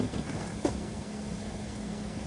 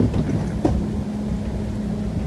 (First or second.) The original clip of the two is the second